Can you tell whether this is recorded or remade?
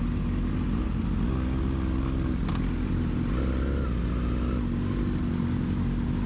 recorded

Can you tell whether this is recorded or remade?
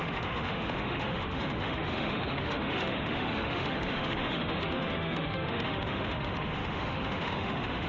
remade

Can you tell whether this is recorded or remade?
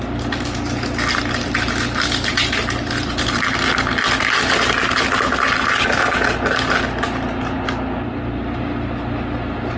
recorded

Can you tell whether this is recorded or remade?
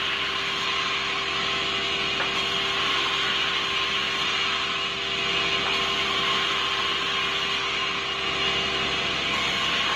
recorded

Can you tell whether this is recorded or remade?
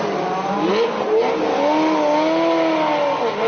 recorded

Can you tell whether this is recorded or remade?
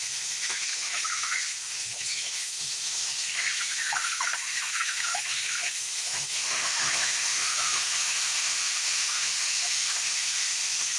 remade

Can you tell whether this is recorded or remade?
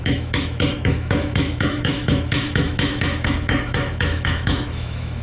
remade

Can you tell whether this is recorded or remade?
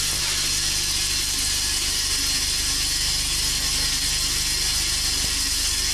recorded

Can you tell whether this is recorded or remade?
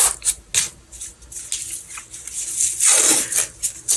recorded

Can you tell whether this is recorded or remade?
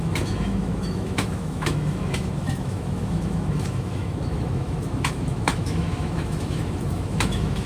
remade